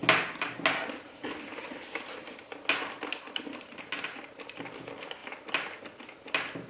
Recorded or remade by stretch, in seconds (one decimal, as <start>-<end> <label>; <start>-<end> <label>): 0.0-6.7 recorded